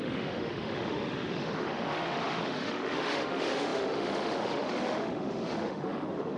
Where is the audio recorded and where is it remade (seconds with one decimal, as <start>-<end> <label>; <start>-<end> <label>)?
0.0-6.4 remade

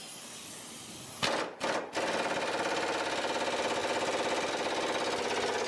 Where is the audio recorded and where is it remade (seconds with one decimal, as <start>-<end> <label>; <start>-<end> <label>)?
0.0-5.7 recorded